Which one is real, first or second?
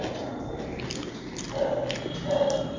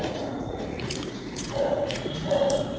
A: first